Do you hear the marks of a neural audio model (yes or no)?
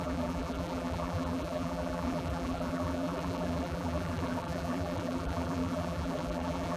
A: yes